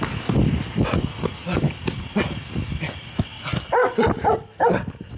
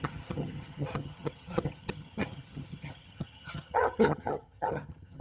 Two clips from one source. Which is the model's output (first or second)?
second